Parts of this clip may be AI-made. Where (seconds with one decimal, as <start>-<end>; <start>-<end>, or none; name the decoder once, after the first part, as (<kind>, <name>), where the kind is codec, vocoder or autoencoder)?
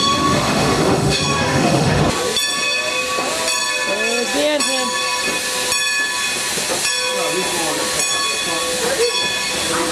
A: 0.0-2.0 (autoencoder, DAC-VAE)